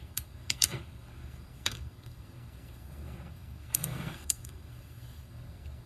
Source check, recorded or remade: remade